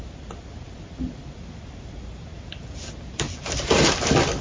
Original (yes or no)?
yes